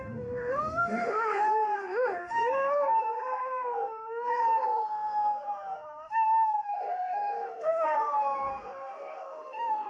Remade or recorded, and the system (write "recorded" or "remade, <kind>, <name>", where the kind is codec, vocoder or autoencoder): remade, autoencoder, DAC-VAE